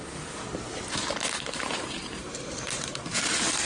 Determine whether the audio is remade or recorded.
remade